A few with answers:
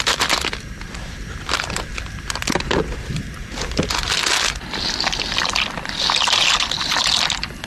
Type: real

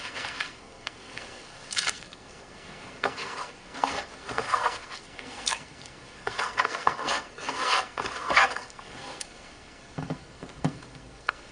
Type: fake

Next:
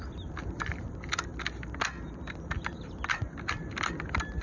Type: real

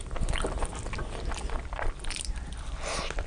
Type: real